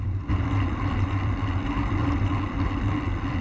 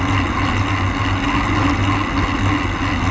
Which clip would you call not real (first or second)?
first